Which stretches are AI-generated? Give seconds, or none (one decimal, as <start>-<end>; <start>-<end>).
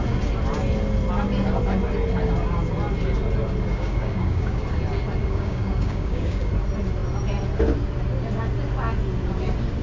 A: 3.7-4.6; 5.2-6.5